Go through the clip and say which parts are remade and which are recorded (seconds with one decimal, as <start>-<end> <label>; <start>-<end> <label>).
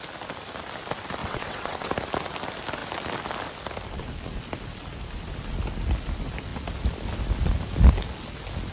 0.0-1.2 recorded; 1.2-1.9 remade; 1.9-8.7 recorded